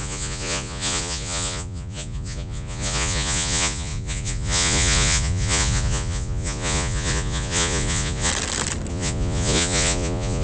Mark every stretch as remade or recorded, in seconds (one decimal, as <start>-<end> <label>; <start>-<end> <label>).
0.0-8.3 remade; 8.3-8.9 recorded; 8.9-10.4 remade